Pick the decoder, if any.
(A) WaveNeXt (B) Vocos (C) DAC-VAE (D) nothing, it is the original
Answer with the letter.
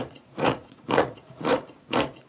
B